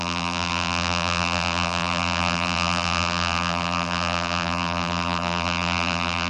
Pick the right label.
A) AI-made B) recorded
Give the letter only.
A